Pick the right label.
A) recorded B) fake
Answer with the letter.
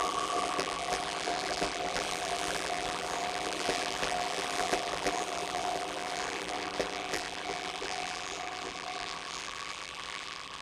B